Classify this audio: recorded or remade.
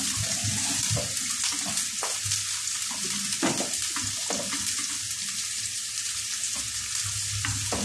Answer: recorded